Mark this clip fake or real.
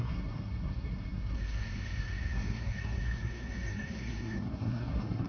fake